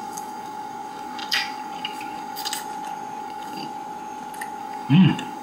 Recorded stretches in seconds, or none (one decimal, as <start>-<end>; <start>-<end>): 2.4-3.2; 3.6-4.6

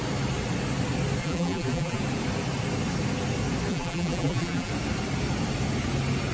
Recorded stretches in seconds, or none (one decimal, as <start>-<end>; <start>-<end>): 0.0-1.2; 2.0-3.7; 4.7-6.3

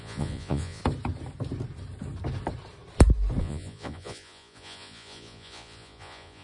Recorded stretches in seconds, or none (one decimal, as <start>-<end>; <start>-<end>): 0.8-3.4

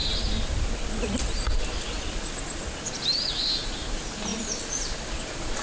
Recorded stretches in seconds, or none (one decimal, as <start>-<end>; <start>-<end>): 0.0-4.3; 5.0-5.6

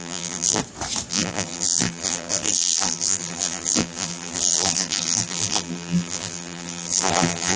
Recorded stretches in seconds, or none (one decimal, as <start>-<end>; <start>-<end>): 0.6-1.1

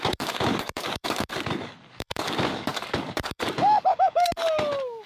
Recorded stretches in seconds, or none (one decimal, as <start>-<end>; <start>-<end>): none

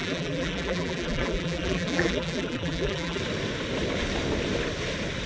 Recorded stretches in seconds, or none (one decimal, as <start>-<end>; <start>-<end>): 3.2-5.3